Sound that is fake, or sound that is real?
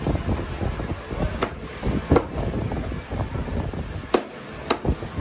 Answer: real